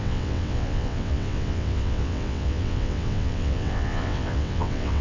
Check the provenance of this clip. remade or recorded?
remade